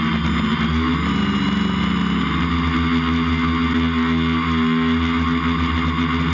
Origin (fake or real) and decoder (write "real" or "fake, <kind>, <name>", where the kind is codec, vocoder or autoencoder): real